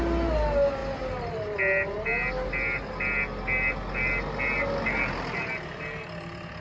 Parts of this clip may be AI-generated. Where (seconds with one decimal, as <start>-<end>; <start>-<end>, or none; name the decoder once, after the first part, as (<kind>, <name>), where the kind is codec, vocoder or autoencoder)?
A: none